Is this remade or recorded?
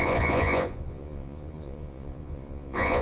remade